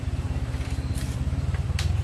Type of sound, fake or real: real